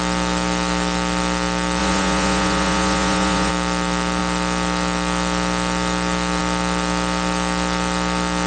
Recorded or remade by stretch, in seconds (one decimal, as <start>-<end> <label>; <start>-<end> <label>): 0.0-1.8 recorded; 1.8-3.5 remade; 3.5-8.5 recorded